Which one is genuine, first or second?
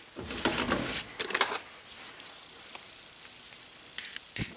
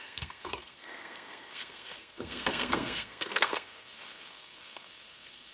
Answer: first